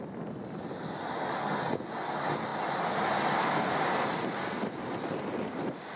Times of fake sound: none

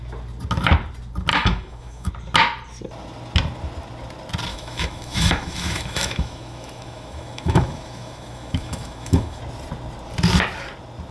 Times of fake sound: 1.3-2.1 (autoencoder, DAC-VAE); 4.5-9.4

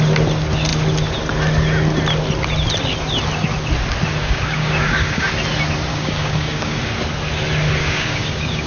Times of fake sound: 4.2-5.3 (codec, DAC); 5.9-6.8; 7.8-8.7

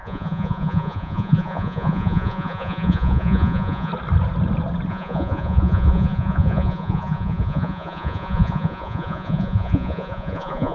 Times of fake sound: 0.0-3.9 (vocoder, Vocos); 4.9-10.7

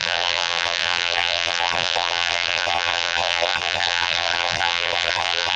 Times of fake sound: 0.0-5.6 (vocoder, BigVGAN v2)

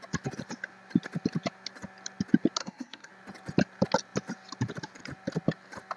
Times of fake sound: 2.6-3.1 (codec, SNAC)

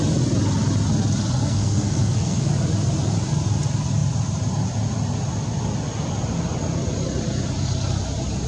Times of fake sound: 1.4-2.5 (codec, SNAC)